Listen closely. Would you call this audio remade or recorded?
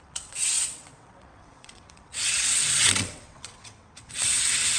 remade